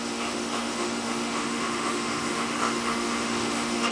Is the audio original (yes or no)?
no